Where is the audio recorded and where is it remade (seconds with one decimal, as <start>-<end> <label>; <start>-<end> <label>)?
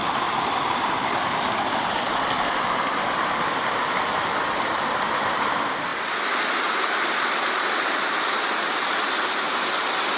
0.0-10.2 recorded